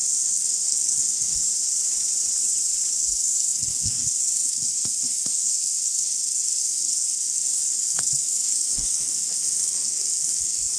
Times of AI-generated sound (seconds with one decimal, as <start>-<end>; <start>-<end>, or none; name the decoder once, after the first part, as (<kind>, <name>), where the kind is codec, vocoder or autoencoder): 0.0-1.4 (codec, SNAC); 2.9-10.8